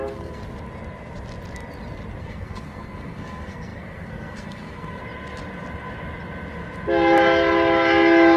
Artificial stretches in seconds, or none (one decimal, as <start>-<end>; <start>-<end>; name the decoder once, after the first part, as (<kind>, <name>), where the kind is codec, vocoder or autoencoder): 0.0-0.4 (codec, SNAC); 2.2-5.0